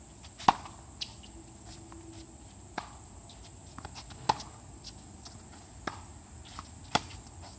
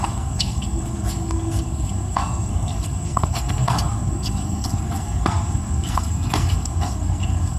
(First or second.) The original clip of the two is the first